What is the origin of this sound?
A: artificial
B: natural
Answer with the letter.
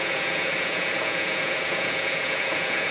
A